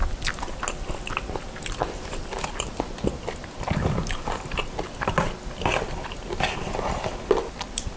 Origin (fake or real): real